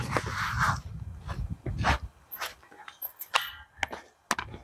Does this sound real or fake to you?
real